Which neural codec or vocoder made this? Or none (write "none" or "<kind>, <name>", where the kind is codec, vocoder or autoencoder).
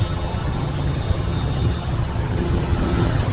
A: vocoder, HiFi-GAN